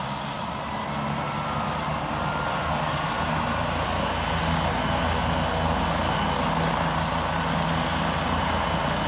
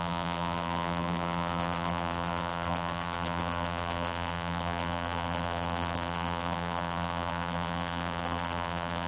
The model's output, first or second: second